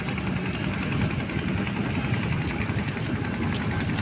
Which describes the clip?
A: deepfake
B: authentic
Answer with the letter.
B